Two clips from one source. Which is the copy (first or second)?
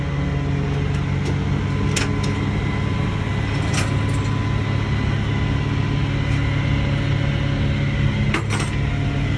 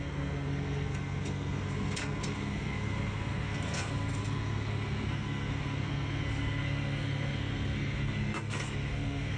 second